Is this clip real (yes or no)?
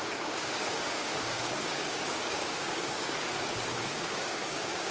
no